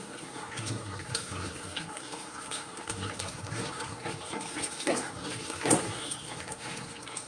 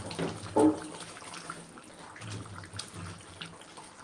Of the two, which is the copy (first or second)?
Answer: first